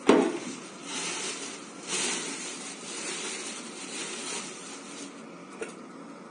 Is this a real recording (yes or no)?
yes